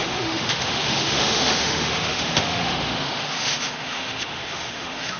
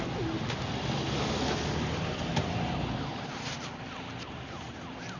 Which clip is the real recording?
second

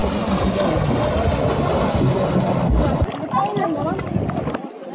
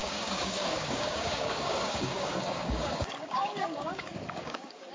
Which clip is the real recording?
first